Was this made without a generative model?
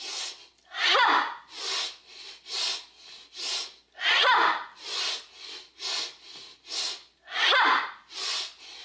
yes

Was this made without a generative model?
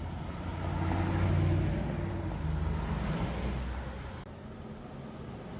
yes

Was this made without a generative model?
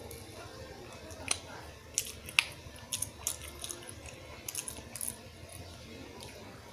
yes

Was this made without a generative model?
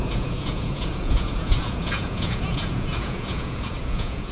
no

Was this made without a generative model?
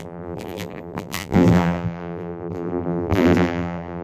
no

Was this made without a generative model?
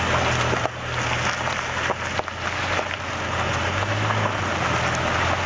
yes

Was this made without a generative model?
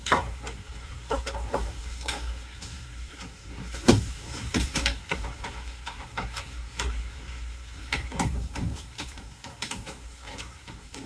no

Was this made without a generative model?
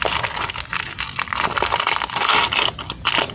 yes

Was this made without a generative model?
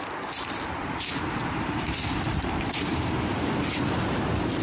no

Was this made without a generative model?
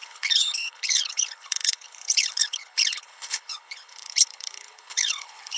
no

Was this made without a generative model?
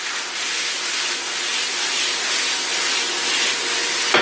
yes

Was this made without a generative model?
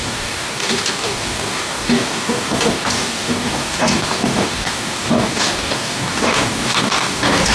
no